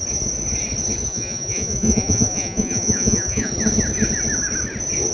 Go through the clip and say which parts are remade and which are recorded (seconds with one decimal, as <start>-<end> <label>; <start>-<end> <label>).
0.0-1.1 recorded; 1.1-3.5 remade; 3.5-5.1 recorded